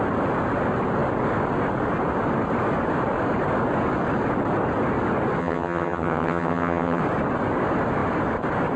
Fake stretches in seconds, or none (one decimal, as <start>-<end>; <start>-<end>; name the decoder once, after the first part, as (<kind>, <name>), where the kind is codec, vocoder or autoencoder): 5.4-7.0 (vocoder, HiFi-GAN)